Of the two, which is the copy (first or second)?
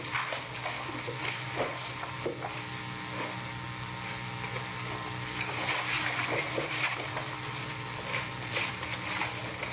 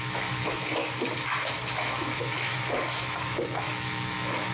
second